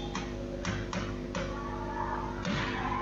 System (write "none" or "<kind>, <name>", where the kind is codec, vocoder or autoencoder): none